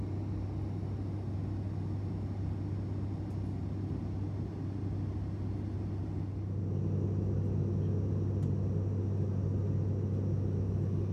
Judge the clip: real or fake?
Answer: real